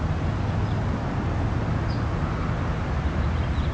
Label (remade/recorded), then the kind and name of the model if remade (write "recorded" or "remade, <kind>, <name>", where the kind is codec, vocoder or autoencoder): recorded